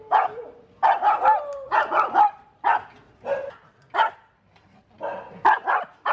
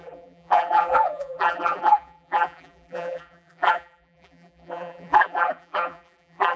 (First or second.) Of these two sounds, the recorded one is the first